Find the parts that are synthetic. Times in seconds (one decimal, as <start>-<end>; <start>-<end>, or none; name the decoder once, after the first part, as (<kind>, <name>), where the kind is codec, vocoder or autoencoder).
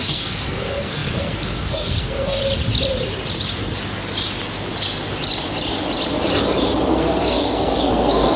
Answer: 0.0-2.4 (codec, SNAC); 6.9-8.4